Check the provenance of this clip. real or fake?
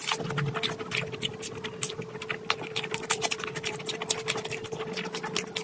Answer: real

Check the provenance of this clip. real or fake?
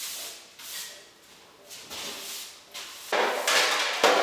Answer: real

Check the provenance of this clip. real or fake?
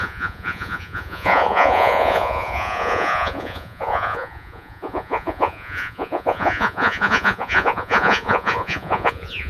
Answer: fake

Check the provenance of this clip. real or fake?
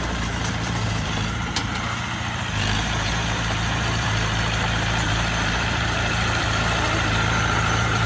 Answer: fake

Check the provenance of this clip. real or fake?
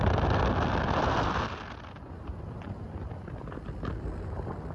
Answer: real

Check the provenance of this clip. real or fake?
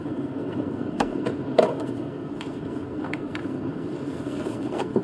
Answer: fake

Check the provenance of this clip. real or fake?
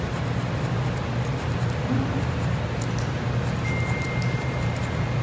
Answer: real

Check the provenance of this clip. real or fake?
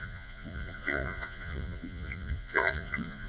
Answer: fake